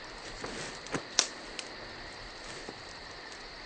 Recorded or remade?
recorded